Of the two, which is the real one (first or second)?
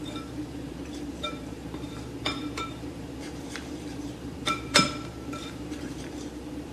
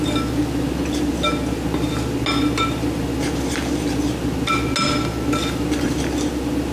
second